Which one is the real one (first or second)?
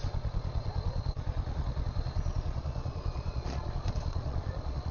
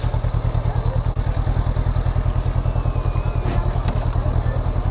second